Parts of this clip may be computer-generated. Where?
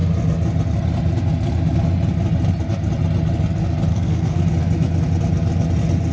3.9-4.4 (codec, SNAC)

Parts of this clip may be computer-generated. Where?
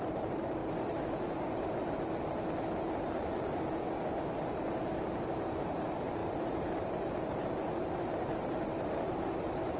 0.0-0.6 (vocoder, BigVGAN v2); 5.3-9.8